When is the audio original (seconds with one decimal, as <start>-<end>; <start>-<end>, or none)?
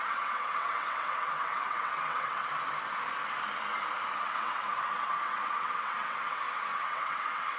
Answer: 2.5-4.1